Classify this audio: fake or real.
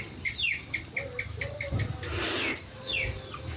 real